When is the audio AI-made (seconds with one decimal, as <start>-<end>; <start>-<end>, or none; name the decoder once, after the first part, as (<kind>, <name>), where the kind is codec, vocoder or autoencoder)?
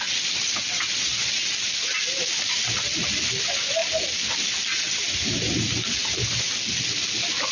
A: none